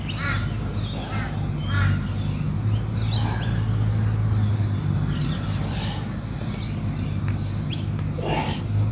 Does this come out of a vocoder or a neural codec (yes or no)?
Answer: no